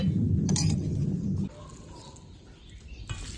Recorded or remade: recorded